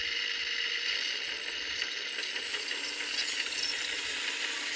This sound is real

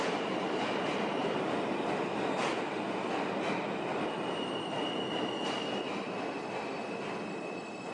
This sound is real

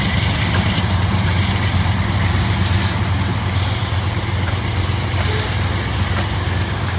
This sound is real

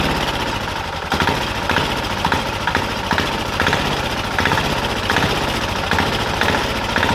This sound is real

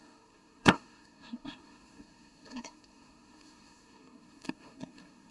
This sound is fake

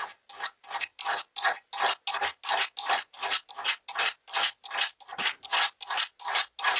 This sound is real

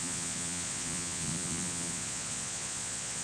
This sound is fake